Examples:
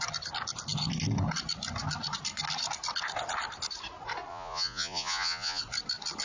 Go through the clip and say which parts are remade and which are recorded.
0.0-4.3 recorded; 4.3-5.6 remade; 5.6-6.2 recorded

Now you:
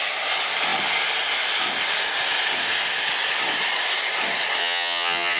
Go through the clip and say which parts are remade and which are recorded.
0.0-4.6 recorded; 4.6-5.4 remade

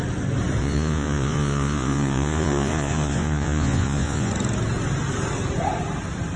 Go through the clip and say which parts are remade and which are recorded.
0.0-0.6 recorded; 0.6-4.3 remade; 4.3-6.4 recorded

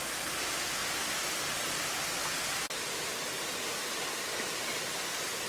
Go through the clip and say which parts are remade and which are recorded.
0.0-5.5 recorded

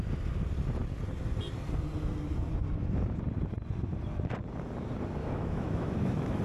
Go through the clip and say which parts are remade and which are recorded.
0.0-5.2 recorded; 5.2-6.4 remade

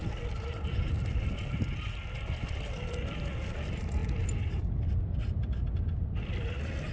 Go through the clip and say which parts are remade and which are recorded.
0.0-6.9 recorded

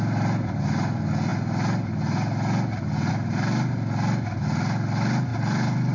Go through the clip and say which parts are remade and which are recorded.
0.0-5.3 recorded; 5.3-5.9 remade